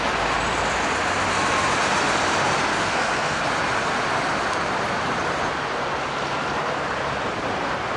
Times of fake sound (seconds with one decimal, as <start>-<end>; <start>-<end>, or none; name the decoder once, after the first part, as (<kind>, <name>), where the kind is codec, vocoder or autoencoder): 2.7-3.4 (codec, SNAC)